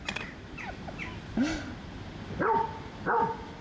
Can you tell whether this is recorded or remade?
recorded